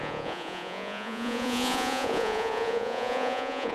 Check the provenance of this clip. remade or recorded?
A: remade